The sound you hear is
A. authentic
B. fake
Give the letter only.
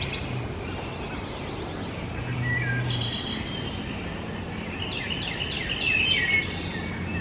A